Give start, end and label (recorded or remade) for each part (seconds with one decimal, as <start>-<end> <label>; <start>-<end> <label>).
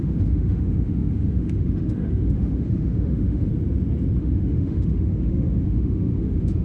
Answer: 0.0-3.5 remade; 3.5-4.2 recorded; 4.2-6.6 remade